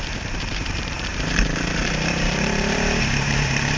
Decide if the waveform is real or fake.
fake